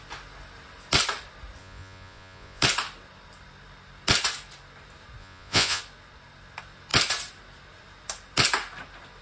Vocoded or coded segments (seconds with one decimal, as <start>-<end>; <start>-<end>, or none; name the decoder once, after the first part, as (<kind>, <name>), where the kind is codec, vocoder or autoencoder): 1.6-2.6 (vocoder, Vocos); 5.2-5.8